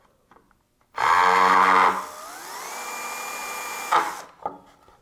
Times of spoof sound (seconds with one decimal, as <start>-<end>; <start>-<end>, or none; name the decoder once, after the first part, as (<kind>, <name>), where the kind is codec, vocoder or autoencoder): none